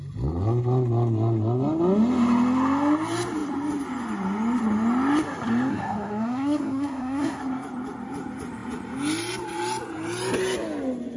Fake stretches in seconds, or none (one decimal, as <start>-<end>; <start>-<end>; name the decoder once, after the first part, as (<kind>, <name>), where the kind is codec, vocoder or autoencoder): 5.7-7.4 (codec, SNAC)